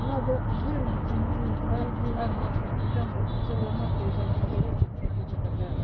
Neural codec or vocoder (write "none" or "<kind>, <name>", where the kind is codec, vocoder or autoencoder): none